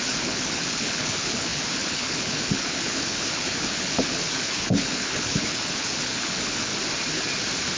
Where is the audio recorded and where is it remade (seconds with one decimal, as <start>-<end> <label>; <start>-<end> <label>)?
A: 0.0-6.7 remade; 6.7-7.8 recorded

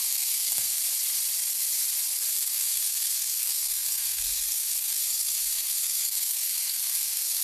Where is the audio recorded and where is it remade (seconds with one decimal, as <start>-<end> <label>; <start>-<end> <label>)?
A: 0.0-0.8 remade; 0.8-2.3 recorded; 2.3-7.4 remade

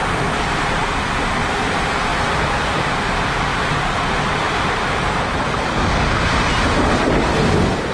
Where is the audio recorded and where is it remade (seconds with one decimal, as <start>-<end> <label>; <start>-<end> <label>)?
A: 0.0-2.1 recorded; 2.1-3.0 remade; 3.0-3.5 recorded; 3.5-4.8 remade; 4.8-6.5 recorded; 6.5-7.0 remade; 7.0-7.9 recorded